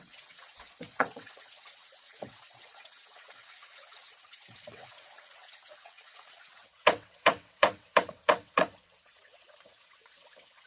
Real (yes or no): no